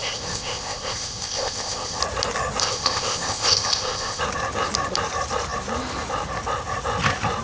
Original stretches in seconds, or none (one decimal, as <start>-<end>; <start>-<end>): 2.0-2.6; 4.2-7.4